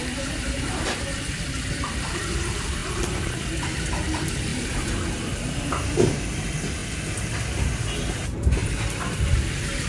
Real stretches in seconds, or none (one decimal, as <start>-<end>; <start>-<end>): 6.8-8.1